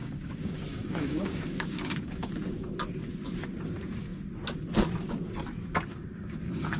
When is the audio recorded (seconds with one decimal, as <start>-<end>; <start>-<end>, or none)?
2.3-5.9